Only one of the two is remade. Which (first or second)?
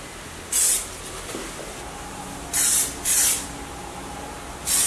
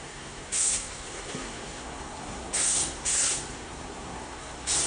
second